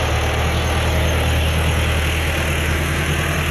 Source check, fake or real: real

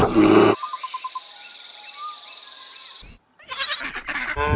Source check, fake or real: real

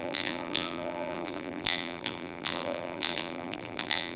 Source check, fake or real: fake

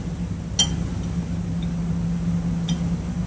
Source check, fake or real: real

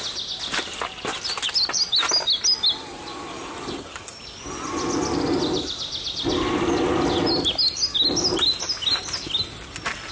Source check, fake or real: real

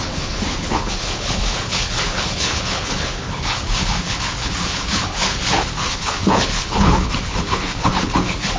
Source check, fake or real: fake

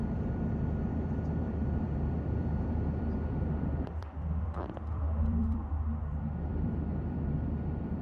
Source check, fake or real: fake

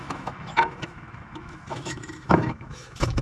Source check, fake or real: fake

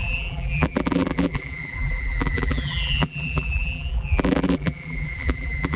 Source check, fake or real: fake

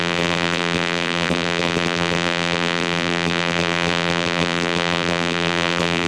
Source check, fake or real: fake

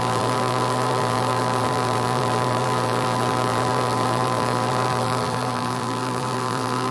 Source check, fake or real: fake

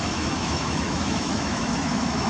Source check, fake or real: fake